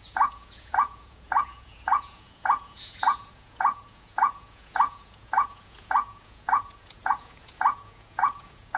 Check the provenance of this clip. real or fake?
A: fake